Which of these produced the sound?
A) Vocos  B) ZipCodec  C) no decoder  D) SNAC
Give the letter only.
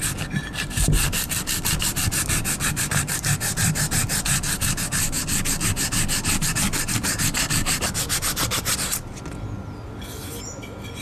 C